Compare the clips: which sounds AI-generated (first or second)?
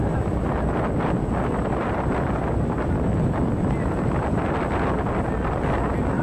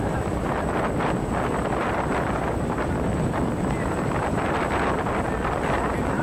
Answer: second